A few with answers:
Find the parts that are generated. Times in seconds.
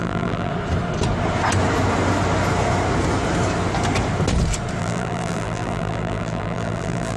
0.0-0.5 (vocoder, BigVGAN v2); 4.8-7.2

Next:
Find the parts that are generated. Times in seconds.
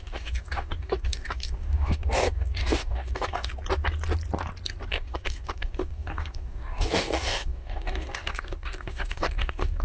0.0-3.5 (codec, DAC); 4.9-9.8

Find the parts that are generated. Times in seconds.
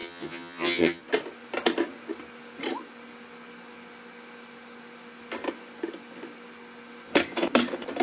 0.0-1.0 (vocoder, HiFi-GAN)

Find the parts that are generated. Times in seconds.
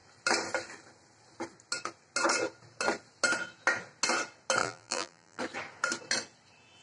4.6-5.4 (vocoder, BigVGAN v2)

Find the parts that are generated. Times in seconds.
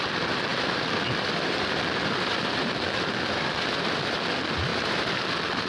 0.5-3.9 (vocoder, BigVGAN v2); 4.7-5.2